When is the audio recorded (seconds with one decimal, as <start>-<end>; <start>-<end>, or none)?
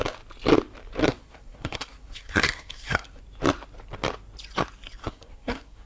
0.0-1.0; 3.2-5.0